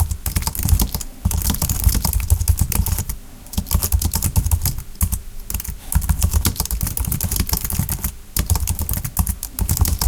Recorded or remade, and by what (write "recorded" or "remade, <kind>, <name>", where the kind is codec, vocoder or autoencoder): recorded